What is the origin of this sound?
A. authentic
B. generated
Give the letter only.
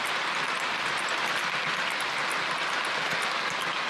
A